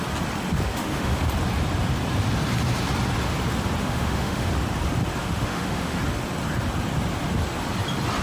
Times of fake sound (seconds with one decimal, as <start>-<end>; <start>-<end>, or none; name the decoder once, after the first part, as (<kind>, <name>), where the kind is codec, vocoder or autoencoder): 0.7-1.3 (autoencoder, DAC-VAE); 3.8-4.5; 5.2-6.0